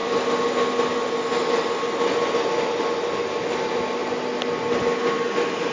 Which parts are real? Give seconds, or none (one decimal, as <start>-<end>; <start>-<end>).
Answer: 0.0-5.7